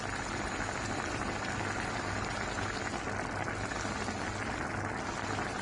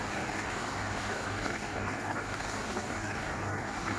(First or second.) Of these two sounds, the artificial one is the second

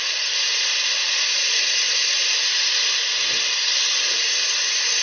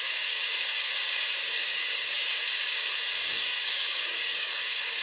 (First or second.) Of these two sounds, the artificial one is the second